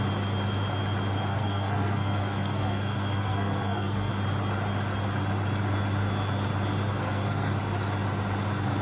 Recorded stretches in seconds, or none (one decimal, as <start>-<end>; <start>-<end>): 0.0-1.3; 4.1-6.9; 7.5-8.8

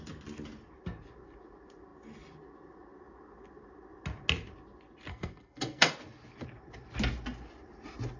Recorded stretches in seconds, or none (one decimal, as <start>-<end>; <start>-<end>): 0.0-5.1; 5.9-8.2

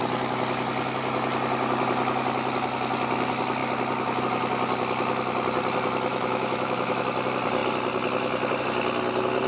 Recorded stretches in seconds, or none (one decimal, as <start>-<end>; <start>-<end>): 0.0-6.1; 7.0-9.5